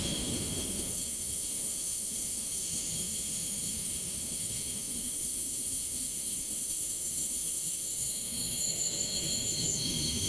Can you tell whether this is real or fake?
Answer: fake